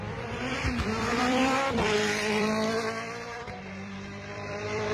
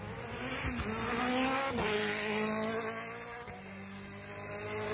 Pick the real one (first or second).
second